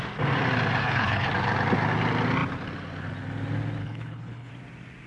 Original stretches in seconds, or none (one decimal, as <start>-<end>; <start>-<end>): 0.0-0.8; 1.3-3.8; 4.5-5.1